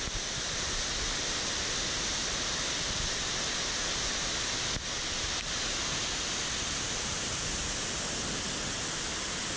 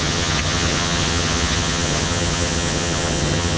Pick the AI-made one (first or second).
second